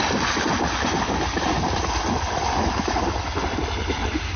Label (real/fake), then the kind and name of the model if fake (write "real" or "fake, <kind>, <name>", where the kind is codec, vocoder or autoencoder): real